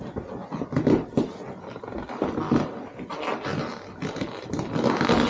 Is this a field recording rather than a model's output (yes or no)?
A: yes